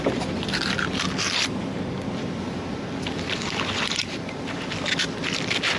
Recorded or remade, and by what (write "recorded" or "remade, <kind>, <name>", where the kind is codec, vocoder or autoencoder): recorded